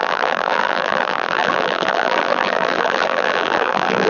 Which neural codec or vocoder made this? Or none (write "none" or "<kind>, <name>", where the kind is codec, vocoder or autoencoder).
vocoder, BigVGAN v2